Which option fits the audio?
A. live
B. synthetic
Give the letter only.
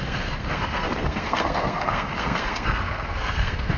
B